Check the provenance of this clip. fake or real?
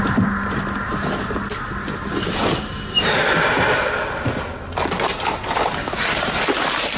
real